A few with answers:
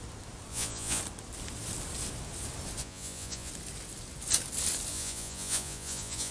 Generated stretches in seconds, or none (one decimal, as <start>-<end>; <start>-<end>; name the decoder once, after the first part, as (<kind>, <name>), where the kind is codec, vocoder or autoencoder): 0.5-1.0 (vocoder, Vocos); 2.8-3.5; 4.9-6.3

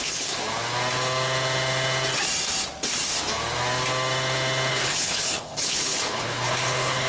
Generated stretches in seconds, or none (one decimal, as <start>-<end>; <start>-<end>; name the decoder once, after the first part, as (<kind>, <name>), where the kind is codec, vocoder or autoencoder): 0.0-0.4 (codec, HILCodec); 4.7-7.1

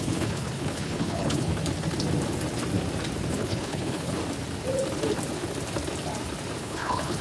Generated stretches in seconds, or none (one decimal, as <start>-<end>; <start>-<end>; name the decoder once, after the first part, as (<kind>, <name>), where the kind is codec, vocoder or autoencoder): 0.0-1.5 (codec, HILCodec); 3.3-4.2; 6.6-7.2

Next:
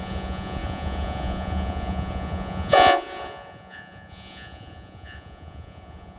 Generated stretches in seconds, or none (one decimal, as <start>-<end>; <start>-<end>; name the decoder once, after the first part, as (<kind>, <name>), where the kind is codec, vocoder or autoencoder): 0.0-6.2 (vocoder, Vocos)